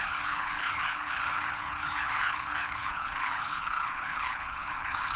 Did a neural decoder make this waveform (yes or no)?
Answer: yes